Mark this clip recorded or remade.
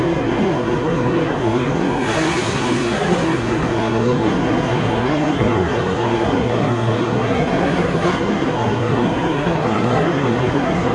remade